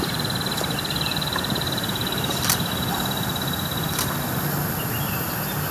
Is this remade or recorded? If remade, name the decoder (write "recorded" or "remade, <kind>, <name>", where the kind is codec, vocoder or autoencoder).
remade, vocoder, BigVGAN v2